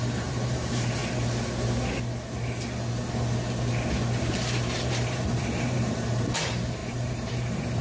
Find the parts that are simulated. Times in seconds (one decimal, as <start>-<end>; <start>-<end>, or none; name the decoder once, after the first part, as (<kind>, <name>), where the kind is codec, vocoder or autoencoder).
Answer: 0.0-1.0 (vocoder, BigVGAN v2); 4.2-7.8